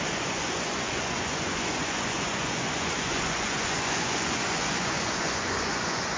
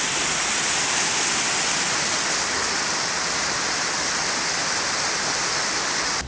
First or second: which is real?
second